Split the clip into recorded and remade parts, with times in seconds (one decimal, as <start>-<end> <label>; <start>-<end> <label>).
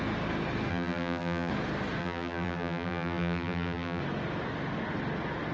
0.0-0.7 recorded; 0.7-1.5 remade; 1.5-2.0 recorded; 2.0-4.0 remade; 4.0-5.5 recorded